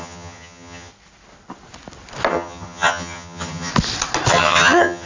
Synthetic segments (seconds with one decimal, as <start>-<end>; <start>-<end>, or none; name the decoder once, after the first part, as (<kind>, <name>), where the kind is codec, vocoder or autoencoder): 0.0-0.9 (vocoder, HiFi-GAN); 2.3-3.7; 4.3-5.1